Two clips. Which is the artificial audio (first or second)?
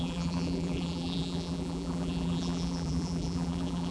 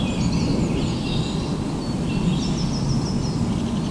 first